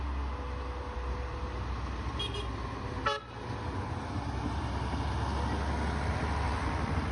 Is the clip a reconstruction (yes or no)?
no